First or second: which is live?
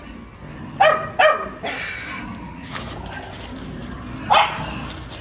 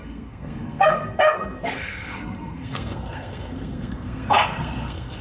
first